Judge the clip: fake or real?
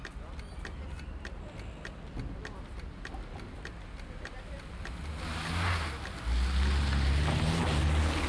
real